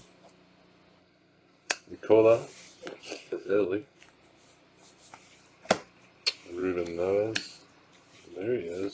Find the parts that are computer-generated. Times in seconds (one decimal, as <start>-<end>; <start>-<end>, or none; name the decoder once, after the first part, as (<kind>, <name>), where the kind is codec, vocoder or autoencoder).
1.0-1.9 (codec, SNAC); 3.1-4.0